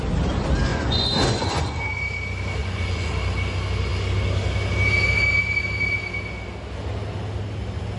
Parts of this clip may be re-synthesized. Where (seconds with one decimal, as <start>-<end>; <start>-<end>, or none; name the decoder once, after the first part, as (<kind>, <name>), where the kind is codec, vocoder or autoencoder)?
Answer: 0.7-1.8 (vocoder, Vocos); 2.6-3.1